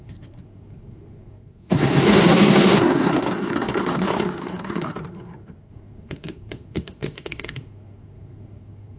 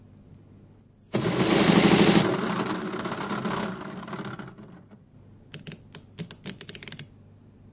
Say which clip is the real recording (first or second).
second